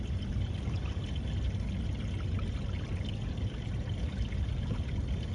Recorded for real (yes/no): yes